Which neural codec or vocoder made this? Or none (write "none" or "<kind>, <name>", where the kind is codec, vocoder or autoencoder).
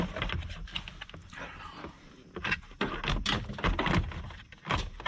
none